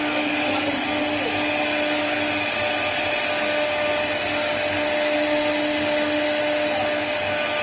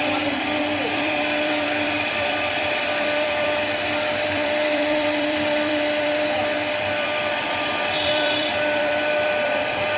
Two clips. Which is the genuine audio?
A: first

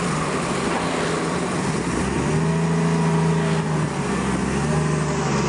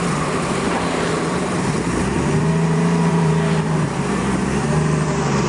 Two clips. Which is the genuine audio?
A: first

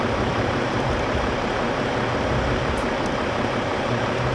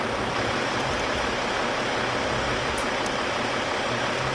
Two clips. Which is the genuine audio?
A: second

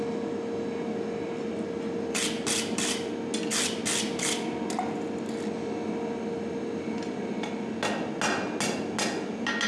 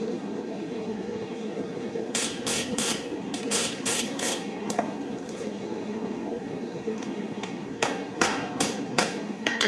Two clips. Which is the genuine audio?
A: first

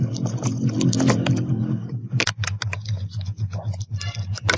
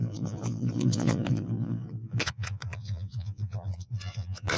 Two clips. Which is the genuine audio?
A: first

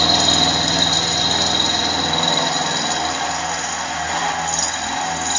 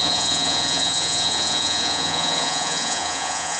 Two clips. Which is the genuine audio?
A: first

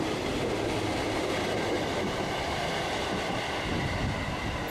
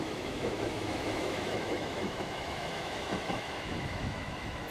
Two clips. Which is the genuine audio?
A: first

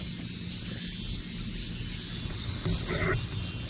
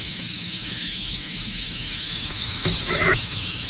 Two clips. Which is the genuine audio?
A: first